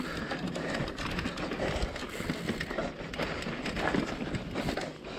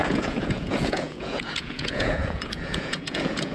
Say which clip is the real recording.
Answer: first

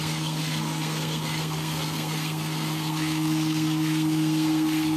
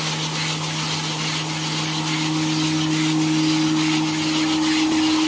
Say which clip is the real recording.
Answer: second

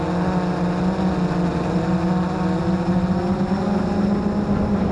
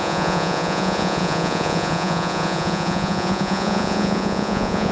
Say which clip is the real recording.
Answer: first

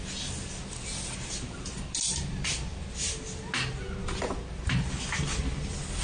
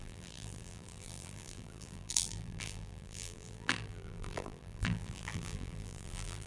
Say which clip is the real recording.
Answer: first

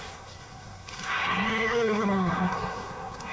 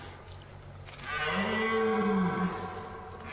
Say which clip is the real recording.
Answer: second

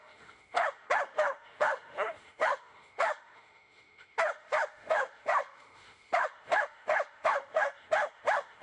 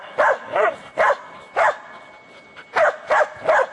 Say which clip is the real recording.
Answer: second